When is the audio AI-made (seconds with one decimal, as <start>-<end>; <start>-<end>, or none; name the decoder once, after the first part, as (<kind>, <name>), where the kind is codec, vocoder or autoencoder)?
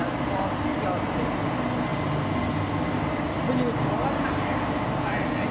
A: none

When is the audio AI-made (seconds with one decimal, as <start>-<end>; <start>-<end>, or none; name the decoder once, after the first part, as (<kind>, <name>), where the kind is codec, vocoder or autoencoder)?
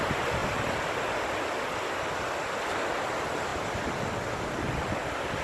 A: none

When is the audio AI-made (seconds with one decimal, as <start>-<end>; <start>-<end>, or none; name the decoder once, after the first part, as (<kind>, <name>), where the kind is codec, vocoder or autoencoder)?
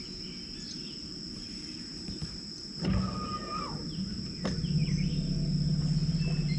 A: 1.4-2.8 (vocoder, BigVGAN v2)